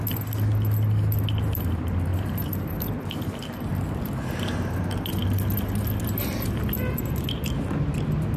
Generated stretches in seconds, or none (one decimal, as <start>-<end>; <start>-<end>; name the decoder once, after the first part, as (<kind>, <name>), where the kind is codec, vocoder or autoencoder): 2.1-2.9 (vocoder, BigVGAN v2)